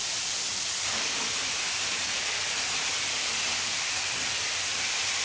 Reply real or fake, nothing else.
fake